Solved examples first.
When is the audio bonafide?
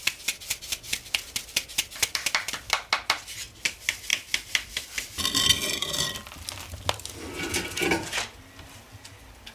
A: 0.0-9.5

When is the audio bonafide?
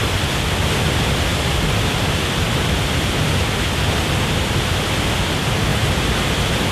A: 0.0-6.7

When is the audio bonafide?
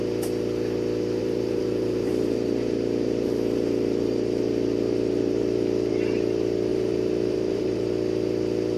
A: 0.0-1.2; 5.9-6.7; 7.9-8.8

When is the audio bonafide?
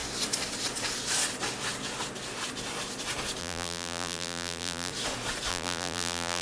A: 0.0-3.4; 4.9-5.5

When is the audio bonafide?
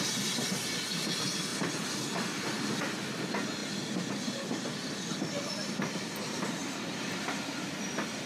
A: 0.0-6.6; 7.2-8.3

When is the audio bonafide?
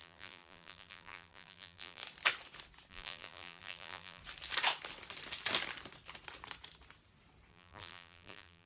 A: 2.0-2.9; 4.2-7.5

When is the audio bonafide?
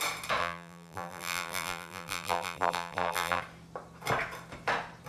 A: 0.0-0.4; 3.4-5.1